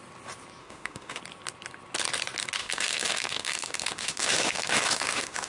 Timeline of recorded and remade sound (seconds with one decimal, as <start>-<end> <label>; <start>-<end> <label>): 0.0-0.6 recorded; 0.6-1.2 remade; 1.2-2.6 recorded; 2.6-5.5 remade

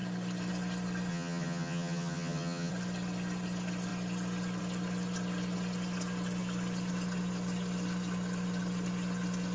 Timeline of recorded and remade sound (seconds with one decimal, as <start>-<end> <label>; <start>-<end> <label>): 0.0-1.1 recorded; 1.1-2.7 remade; 2.7-9.5 recorded

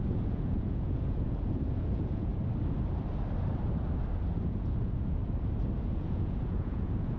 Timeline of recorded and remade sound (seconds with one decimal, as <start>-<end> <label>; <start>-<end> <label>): 0.0-2.3 remade; 2.3-4.4 recorded; 4.4-5.2 remade; 5.2-5.8 recorded; 5.8-7.2 remade